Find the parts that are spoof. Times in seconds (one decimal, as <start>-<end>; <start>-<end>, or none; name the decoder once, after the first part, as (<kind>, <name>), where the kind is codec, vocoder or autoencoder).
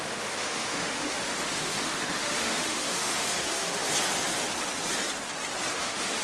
0.0-3.8 (autoencoder, DAC-VAE); 5.7-6.2